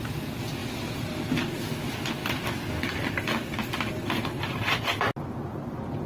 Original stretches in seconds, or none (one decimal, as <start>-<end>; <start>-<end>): 0.0-6.1